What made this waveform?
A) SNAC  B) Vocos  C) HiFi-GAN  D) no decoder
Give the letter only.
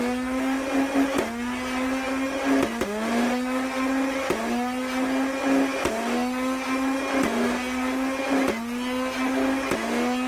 D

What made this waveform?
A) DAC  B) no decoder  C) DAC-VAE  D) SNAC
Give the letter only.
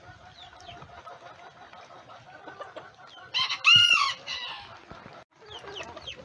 B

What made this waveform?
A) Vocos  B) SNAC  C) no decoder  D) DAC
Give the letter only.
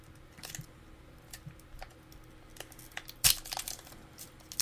C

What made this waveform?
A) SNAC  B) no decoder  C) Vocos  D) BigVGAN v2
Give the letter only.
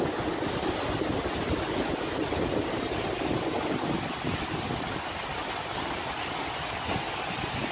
B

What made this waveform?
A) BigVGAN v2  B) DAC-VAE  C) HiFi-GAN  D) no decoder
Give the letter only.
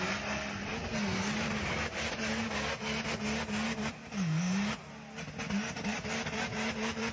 D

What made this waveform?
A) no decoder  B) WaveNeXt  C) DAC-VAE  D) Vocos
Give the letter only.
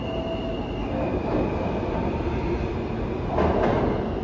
A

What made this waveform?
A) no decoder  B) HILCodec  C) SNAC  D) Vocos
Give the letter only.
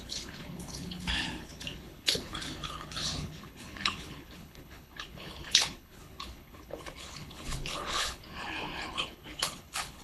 B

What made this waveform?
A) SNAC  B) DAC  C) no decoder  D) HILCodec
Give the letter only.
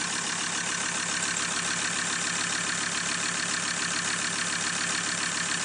C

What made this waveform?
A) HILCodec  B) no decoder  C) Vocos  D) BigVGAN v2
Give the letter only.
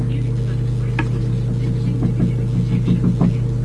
B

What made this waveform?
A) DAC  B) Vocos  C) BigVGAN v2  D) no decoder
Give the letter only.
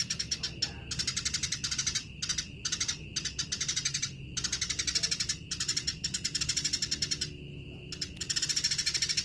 D